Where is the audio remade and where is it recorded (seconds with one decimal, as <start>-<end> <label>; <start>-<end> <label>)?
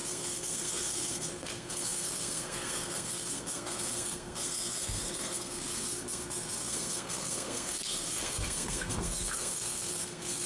0.0-10.5 remade